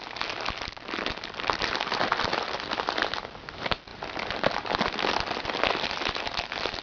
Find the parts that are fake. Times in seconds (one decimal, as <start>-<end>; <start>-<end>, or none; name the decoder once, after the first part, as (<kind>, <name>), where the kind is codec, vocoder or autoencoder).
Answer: none